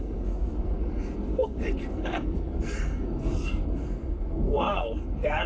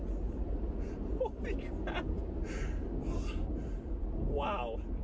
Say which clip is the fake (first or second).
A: first